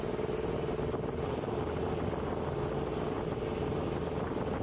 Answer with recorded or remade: recorded